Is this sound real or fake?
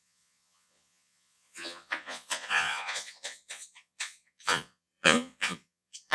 fake